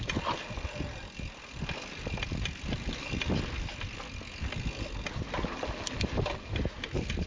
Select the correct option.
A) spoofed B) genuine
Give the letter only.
B